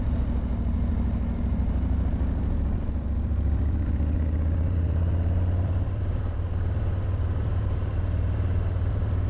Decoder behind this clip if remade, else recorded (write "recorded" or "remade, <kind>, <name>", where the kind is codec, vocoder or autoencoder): remade, vocoder, BigVGAN v2